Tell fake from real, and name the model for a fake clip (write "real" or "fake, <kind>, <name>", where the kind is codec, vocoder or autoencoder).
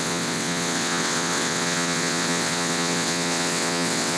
fake, vocoder, WaveNeXt